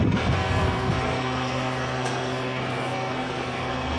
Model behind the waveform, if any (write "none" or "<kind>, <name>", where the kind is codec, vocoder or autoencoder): codec, SNAC